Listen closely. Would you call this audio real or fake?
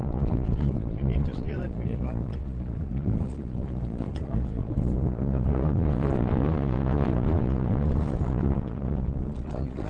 fake